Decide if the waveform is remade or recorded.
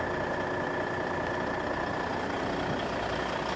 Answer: recorded